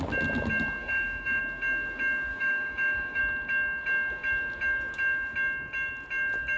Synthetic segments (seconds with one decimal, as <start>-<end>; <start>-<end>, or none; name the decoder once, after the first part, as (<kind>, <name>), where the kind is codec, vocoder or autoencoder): 0.8-1.4 (autoencoder, DAC-VAE); 2.3-3.2